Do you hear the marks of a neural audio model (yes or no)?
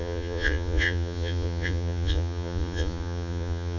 yes